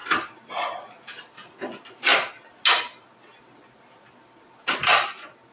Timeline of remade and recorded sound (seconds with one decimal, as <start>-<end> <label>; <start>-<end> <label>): 0.0-2.1 remade; 2.1-3.7 recorded; 3.7-5.5 remade

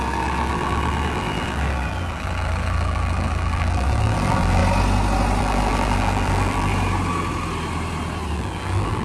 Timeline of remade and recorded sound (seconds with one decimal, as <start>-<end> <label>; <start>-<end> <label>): 0.0-4.6 remade; 4.6-5.4 recorded; 5.4-6.7 remade; 6.7-8.3 recorded; 8.3-9.0 remade

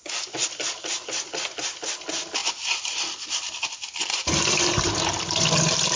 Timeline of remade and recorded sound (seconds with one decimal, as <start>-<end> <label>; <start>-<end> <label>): 0.0-6.0 recorded

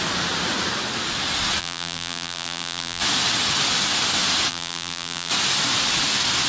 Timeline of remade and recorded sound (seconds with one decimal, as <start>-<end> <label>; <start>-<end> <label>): 0.0-1.6 recorded; 1.6-3.0 remade; 3.0-4.5 recorded; 4.5-5.3 remade; 5.3-6.5 recorded

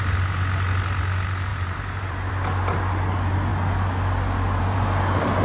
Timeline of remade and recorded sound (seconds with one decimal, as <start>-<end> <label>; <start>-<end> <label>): 0.0-1.5 recorded; 1.5-2.3 remade; 2.3-5.4 recorded

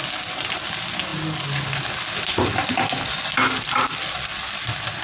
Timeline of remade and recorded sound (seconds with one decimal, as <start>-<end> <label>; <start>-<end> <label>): 0.0-5.0 recorded

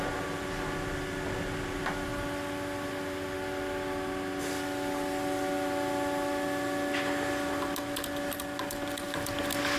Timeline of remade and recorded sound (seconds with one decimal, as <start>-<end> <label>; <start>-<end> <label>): 0.0-9.8 recorded